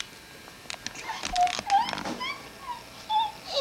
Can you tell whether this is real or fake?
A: real